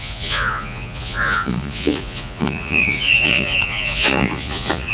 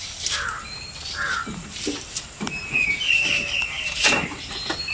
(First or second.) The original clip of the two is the second